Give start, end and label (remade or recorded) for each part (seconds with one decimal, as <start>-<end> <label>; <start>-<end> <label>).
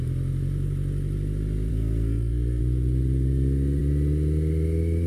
0.0-1.7 recorded; 1.7-2.6 remade; 2.6-5.1 recorded